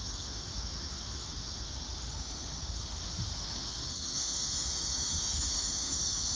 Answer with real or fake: fake